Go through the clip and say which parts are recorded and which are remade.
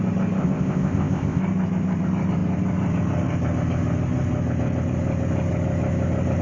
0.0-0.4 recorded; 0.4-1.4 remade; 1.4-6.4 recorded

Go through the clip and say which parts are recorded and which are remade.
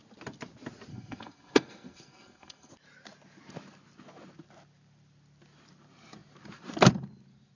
0.0-0.9 recorded; 0.9-2.7 remade; 2.7-7.6 recorded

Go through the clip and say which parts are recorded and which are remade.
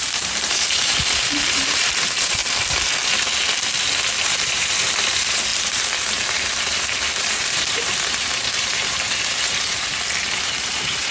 0.0-2.4 remade; 2.4-4.2 recorded; 4.2-9.9 remade; 9.9-10.4 recorded; 10.4-11.1 remade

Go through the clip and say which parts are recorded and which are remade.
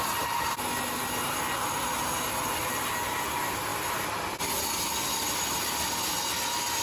0.0-6.8 recorded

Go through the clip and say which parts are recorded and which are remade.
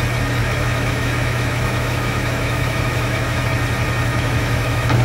0.0-0.4 recorded; 0.4-3.4 remade; 3.4-4.1 recorded; 4.1-5.0 remade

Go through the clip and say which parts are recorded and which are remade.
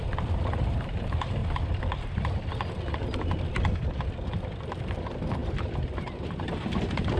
0.0-0.6 recorded; 0.6-1.4 remade; 1.4-4.8 recorded; 4.8-7.2 remade